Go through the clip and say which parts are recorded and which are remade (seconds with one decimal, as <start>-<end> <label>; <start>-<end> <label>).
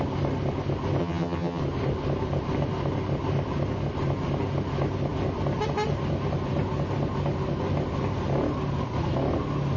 0.0-1.0 recorded; 1.0-1.6 remade; 1.6-9.8 recorded